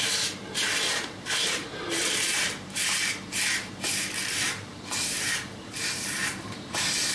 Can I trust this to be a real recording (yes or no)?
no